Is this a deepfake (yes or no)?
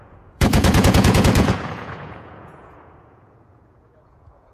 yes